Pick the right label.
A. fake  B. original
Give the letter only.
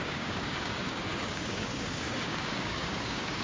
A